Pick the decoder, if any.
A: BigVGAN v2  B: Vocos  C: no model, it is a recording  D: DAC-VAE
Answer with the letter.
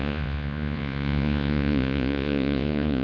B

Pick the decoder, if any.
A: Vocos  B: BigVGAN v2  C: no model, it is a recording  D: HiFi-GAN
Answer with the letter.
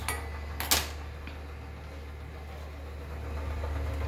C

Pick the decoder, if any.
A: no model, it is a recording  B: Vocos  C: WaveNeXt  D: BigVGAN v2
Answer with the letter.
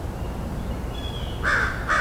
A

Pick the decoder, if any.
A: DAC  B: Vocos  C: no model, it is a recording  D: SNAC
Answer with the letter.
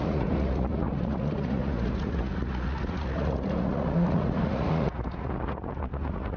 B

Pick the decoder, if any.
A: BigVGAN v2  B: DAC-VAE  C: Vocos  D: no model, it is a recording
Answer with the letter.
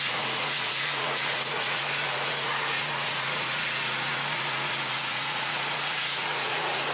C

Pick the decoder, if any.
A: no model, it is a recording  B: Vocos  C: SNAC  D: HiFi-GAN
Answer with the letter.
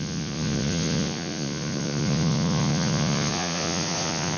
B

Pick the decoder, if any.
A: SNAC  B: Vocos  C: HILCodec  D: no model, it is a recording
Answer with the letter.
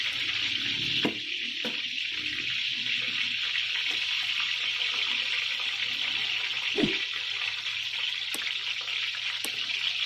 D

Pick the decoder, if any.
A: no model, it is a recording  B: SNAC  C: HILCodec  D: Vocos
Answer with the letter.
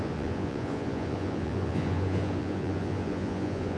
D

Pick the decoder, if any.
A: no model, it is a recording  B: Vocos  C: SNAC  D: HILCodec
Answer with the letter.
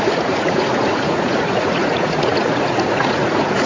B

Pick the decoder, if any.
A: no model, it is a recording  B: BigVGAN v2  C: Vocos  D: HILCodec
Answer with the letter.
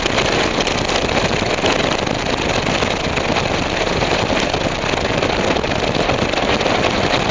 A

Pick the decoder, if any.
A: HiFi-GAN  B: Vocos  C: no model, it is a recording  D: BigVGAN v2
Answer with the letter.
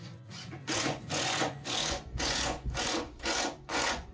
B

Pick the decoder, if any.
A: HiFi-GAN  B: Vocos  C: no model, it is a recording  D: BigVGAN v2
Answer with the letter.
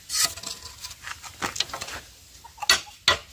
C